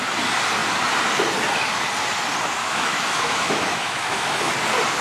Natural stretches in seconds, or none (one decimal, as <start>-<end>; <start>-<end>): 0.0-2.6; 4.5-5.0